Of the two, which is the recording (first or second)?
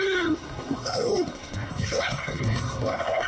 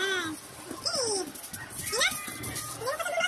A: second